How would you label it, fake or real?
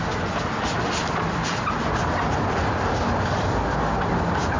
real